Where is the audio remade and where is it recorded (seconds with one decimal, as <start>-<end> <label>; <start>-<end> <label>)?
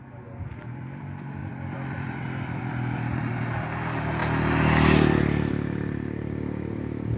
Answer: 0.0-1.4 recorded; 1.4-2.6 remade; 2.6-4.2 recorded; 4.2-5.5 remade; 5.5-7.2 recorded